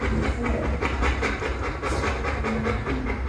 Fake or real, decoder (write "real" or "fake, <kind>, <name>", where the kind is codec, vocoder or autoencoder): real